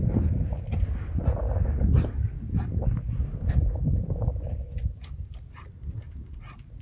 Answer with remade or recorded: recorded